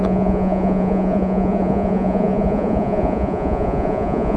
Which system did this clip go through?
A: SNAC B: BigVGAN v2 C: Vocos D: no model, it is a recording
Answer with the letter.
C